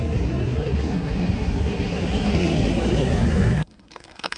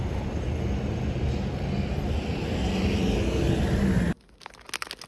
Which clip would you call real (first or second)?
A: second